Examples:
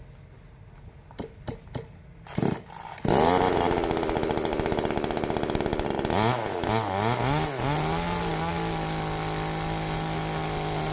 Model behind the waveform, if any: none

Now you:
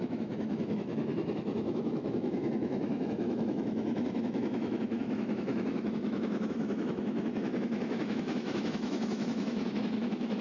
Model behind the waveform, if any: autoencoder, DAC-VAE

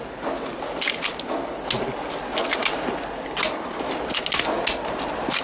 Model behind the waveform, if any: none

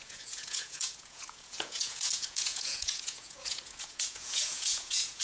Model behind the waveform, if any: vocoder, Vocos